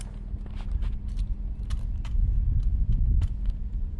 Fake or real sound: real